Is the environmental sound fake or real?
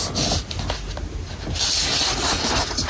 real